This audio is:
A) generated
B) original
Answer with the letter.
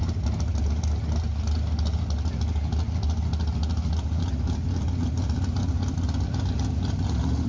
B